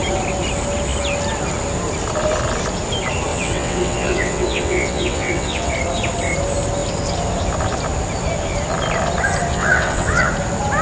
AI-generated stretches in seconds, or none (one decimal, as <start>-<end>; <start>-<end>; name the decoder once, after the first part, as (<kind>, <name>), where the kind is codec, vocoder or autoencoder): 3.3-5.7 (vocoder, WaveNeXt); 9.5-10.3